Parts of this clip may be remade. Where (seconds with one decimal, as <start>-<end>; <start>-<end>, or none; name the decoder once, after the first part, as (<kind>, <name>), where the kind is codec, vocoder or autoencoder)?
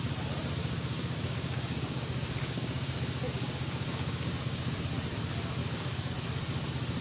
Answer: 0.6-4.8 (codec, DAC); 5.6-6.1